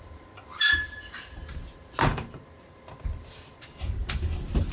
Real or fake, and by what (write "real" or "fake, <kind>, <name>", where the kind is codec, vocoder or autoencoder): real